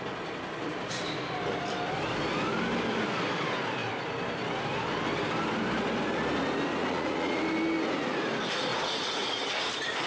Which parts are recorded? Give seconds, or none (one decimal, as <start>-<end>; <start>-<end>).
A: 0.0-6.8; 7.4-8.7; 9.7-10.1